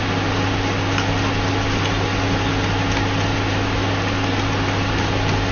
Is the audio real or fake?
real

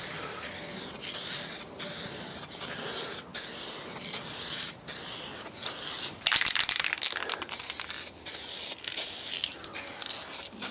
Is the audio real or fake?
real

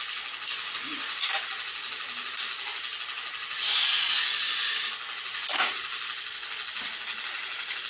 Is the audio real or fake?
real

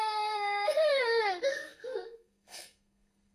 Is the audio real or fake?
fake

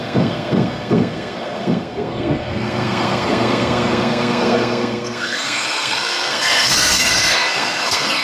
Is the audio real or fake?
fake